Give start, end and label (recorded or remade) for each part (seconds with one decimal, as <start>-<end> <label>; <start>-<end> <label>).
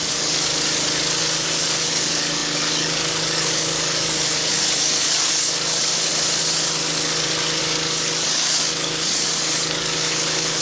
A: 0.0-0.5 remade; 0.5-1.2 recorded; 1.2-6.1 remade; 6.1-7.6 recorded; 7.6-10.6 remade